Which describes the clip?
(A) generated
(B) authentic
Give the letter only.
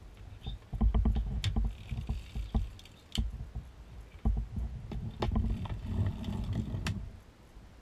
B